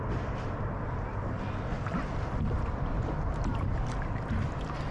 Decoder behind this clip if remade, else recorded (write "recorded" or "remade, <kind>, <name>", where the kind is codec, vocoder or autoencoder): recorded